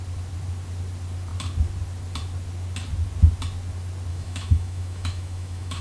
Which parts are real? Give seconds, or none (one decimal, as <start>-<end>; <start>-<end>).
0.0-4.1